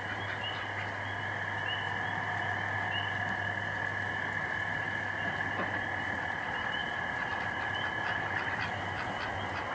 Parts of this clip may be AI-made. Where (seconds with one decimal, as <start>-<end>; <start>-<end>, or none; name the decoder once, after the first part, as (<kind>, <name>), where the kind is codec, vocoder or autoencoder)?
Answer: none